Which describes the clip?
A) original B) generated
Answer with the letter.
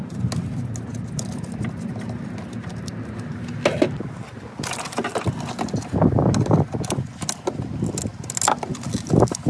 A